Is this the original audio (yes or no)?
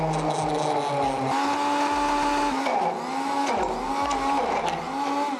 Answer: yes